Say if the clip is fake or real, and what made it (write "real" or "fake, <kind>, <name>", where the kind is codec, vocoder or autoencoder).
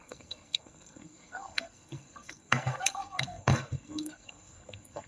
fake, codec, SNAC